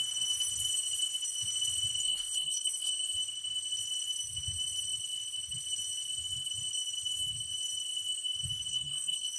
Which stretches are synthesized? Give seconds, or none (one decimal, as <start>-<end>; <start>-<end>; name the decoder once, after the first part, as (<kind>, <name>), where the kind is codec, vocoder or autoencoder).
2.0-2.9 (codec, SNAC); 8.7-9.4

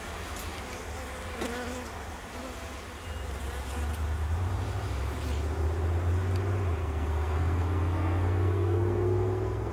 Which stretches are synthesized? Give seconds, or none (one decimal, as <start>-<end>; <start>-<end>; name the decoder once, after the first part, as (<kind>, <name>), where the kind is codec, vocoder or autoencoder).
6.8-9.7 (codec, SNAC)